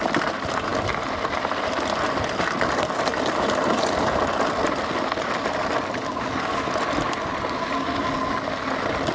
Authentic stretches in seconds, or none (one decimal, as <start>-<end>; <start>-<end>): 0.0-9.1